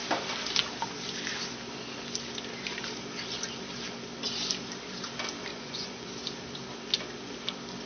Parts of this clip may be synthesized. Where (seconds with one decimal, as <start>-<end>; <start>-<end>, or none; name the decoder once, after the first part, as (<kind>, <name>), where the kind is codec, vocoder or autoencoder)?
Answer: 5.5-6.1 (vocoder, Vocos)